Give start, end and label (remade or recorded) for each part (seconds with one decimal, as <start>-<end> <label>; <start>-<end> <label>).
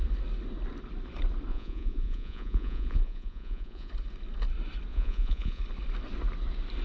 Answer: 0.0-1.5 recorded; 1.5-3.9 remade; 3.9-4.9 recorded; 4.9-5.6 remade; 5.6-6.8 recorded